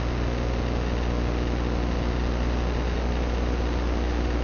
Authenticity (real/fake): real